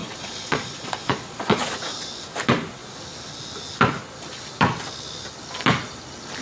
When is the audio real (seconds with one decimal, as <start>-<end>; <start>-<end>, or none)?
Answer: 2.1-6.4